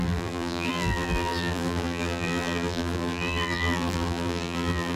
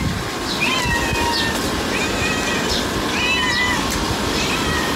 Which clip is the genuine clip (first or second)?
second